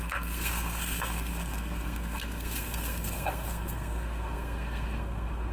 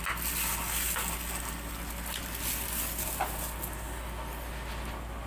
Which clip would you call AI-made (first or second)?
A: first